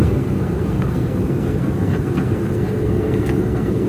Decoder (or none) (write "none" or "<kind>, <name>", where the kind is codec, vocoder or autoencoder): codec, SNAC